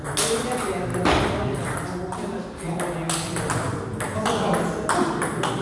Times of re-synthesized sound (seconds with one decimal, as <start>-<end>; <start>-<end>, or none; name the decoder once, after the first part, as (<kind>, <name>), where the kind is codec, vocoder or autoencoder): none